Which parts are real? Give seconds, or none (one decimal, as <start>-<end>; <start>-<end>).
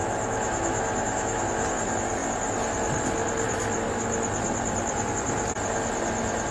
1.7-6.5